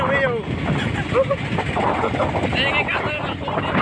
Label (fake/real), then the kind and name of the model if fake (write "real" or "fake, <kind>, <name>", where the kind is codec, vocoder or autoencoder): real